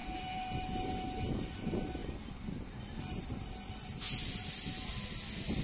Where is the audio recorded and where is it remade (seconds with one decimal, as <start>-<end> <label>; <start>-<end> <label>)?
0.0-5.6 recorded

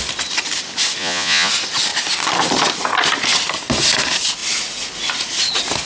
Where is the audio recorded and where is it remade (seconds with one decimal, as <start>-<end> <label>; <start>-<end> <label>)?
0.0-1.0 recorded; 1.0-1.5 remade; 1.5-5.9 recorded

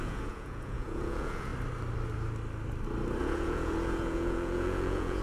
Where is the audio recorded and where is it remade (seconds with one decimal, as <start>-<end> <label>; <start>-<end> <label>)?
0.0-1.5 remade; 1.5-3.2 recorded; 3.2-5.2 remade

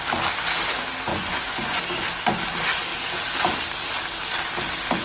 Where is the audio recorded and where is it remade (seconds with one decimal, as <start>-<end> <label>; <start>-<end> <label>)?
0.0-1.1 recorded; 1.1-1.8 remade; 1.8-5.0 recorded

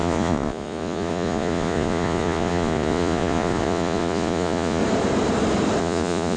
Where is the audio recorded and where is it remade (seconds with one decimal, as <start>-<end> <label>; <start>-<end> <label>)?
0.0-4.8 remade; 4.8-5.8 recorded; 5.8-6.4 remade

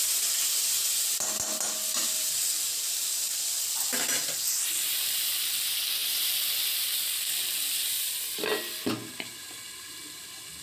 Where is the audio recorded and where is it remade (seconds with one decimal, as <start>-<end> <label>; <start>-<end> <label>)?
0.0-10.6 recorded